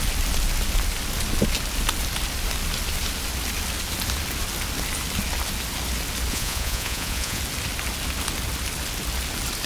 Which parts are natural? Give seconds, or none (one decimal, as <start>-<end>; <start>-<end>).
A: 0.0-6.3; 7.4-9.7

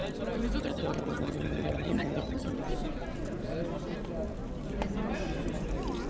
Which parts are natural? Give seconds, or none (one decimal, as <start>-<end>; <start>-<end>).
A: 0.0-0.6; 2.6-6.1

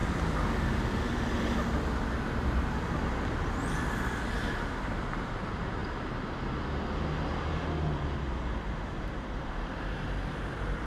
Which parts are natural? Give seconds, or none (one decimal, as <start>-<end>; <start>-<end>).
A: 0.0-4.3; 5.8-8.5